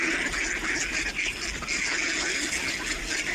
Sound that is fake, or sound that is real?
real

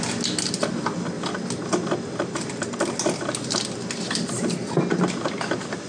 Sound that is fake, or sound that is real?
real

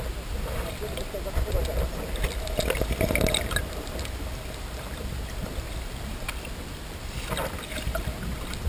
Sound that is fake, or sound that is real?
real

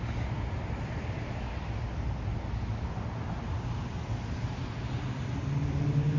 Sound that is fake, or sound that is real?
real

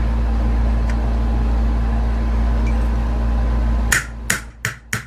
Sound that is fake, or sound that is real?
real